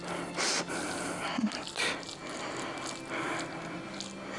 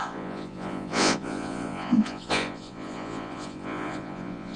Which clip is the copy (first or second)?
second